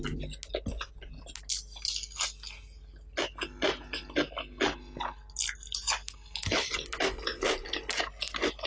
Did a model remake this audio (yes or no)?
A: no